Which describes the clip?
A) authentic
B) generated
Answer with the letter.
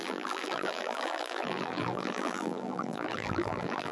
B